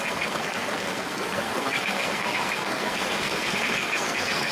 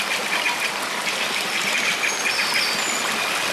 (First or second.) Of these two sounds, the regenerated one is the first